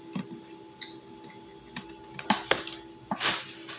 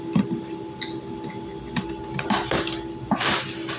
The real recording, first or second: first